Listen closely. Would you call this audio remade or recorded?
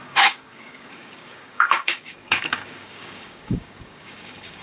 remade